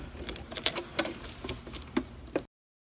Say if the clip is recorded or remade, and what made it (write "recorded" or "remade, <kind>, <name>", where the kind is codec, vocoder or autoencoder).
recorded